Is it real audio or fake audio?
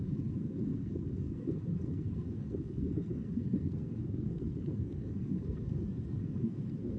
fake